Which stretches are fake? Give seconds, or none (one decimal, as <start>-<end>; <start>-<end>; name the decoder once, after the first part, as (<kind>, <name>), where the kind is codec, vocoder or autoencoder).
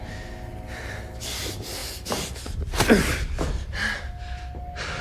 none